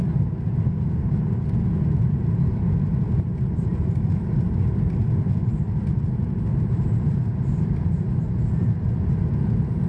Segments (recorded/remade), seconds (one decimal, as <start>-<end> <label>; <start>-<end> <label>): 0.0-3.3 recorded; 3.3-4.6 remade; 4.6-6.5 recorded; 6.5-8.2 remade; 8.2-9.9 recorded